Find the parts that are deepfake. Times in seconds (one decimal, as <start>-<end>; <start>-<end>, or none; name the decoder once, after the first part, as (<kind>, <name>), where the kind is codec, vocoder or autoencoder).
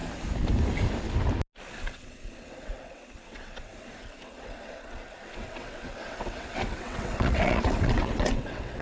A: 1.9-8.8 (vocoder, WaveNeXt)